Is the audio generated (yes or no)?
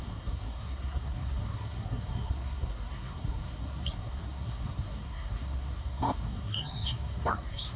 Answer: yes